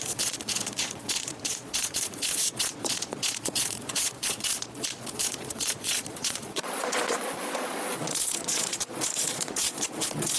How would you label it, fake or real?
fake